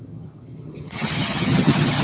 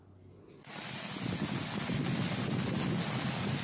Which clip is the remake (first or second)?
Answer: first